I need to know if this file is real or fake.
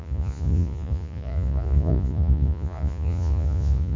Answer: fake